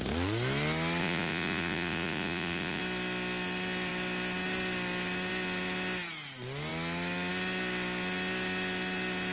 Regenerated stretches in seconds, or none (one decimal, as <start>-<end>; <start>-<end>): 1.0-2.8